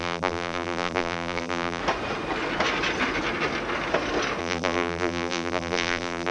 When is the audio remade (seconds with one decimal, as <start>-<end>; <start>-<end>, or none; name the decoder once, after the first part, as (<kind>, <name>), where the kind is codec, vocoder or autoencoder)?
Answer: 0.0-1.8 (vocoder, BigVGAN v2); 4.4-6.3